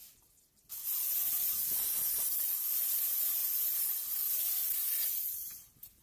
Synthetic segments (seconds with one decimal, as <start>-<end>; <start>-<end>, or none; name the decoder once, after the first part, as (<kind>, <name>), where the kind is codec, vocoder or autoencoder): none